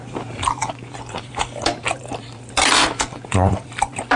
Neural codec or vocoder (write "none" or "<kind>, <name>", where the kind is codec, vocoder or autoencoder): vocoder, BigVGAN v2